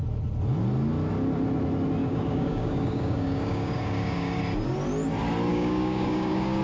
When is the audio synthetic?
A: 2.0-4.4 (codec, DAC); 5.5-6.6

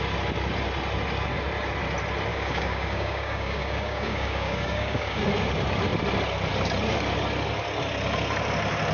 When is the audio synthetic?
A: 2.3-5.2 (codec, DAC)

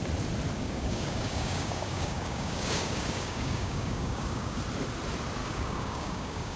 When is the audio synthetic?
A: 0.6-4.6 (codec, DAC); 5.4-6.6

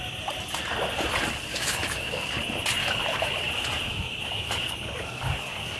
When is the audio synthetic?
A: 1.5-2.3 (codec, DAC); 2.8-3.5; 3.9-5.8